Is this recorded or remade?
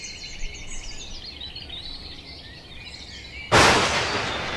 recorded